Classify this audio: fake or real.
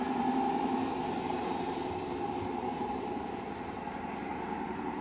fake